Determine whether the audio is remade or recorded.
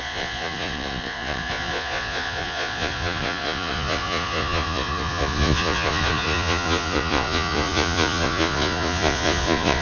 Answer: remade